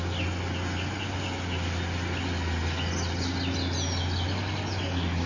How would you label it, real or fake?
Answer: real